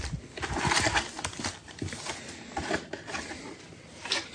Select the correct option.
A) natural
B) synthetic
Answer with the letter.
A